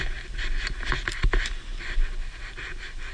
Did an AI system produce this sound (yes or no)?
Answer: no